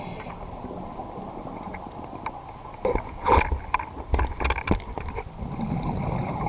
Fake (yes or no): no